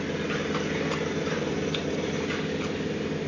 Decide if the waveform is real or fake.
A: real